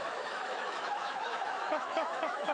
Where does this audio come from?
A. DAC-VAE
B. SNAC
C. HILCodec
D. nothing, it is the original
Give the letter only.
A